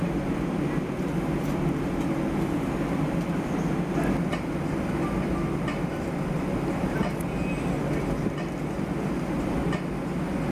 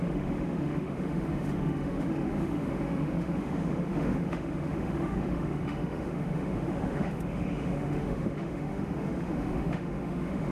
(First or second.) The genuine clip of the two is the first